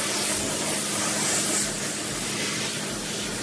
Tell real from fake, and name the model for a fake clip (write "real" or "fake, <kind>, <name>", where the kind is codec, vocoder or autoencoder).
real